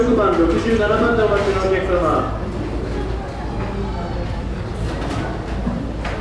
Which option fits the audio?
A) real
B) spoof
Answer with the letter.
A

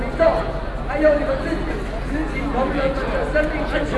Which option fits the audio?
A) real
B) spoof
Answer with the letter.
A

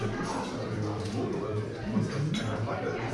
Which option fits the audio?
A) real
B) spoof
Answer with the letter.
B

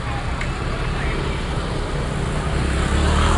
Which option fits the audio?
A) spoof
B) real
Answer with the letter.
B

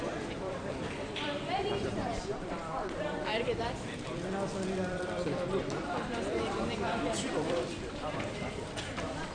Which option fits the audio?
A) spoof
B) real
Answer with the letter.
A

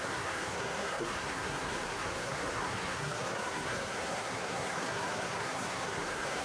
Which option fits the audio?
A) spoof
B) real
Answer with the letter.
A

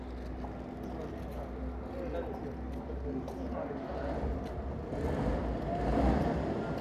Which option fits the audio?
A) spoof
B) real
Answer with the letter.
B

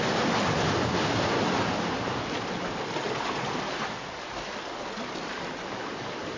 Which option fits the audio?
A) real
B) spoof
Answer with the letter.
A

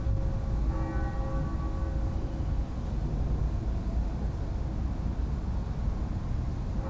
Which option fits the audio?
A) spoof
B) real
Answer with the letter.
B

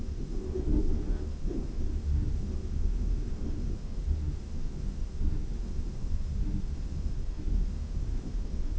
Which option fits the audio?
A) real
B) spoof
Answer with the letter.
B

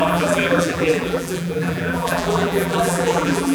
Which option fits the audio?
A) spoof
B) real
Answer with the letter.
A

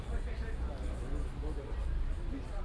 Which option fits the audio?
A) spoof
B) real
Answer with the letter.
B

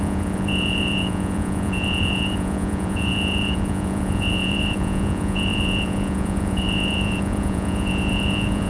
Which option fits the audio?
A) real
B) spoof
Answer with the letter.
B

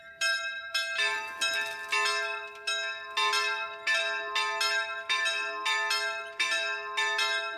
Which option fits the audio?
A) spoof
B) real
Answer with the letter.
B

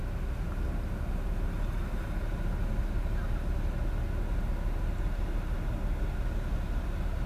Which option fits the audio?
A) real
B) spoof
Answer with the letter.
A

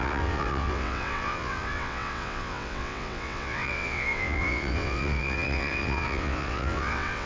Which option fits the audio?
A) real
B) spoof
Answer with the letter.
B